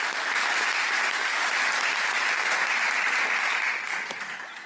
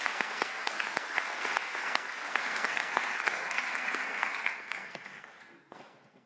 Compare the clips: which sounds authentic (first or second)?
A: first